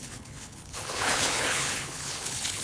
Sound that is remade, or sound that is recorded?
remade